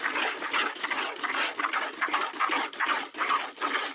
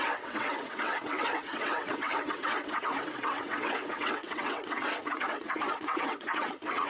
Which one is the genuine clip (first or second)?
first